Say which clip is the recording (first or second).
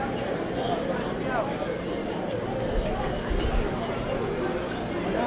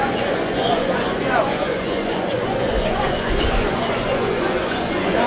first